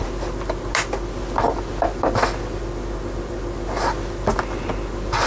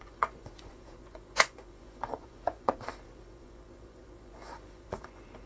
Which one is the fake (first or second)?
second